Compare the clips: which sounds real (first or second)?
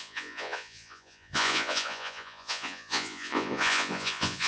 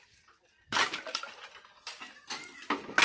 second